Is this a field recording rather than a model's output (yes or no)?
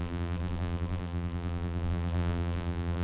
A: no